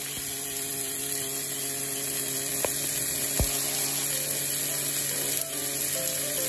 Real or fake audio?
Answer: real